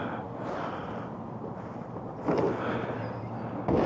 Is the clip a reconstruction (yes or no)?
yes